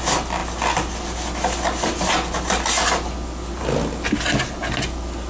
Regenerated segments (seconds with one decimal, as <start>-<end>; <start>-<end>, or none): none